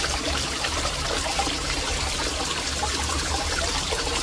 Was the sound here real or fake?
fake